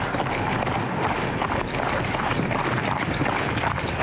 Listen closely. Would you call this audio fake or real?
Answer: real